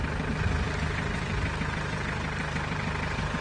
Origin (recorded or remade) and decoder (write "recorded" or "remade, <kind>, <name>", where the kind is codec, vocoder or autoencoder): recorded